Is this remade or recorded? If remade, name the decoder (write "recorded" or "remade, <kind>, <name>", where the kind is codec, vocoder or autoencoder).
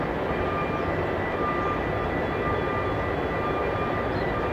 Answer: recorded